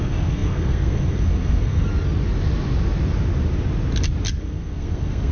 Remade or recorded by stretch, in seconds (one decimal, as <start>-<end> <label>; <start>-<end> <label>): 0.0-1.9 remade; 1.9-4.4 recorded; 4.4-5.3 remade